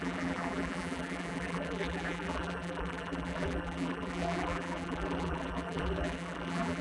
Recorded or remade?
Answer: remade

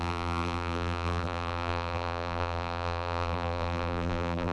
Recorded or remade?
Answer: remade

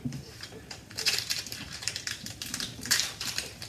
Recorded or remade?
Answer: remade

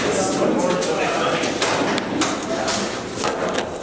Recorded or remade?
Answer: recorded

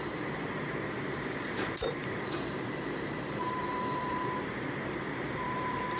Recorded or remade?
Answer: remade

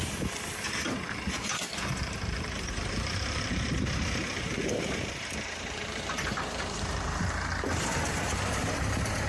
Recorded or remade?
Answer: remade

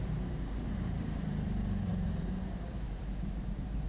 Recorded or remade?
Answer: remade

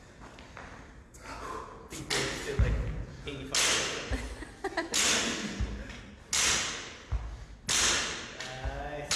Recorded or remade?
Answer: recorded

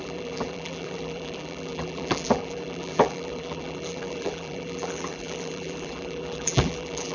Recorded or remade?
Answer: remade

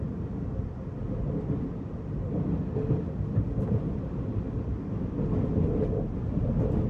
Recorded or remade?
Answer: recorded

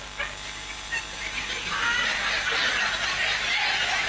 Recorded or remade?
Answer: recorded